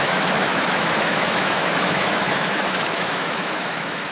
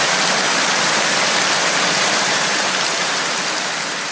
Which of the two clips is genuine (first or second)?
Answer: second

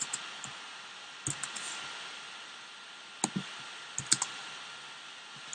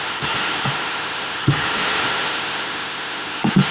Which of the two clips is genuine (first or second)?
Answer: first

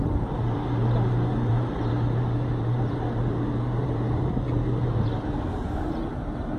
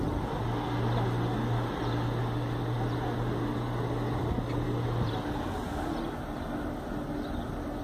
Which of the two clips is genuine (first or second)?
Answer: second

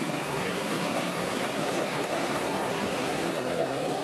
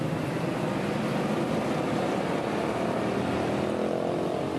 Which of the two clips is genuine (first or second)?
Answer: second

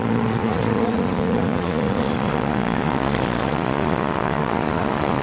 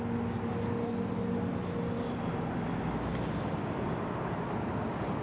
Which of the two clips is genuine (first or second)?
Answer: second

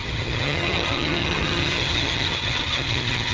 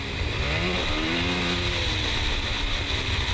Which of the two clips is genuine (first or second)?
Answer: second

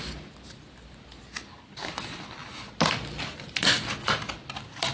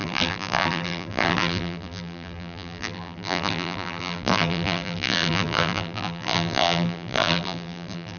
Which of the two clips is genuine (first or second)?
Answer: first